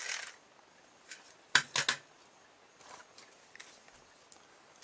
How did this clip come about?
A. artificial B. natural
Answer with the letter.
B